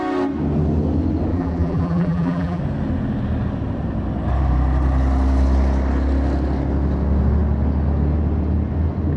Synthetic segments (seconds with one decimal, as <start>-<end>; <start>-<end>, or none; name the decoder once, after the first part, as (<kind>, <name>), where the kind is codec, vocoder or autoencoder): 1.3-2.6 (vocoder, BigVGAN v2)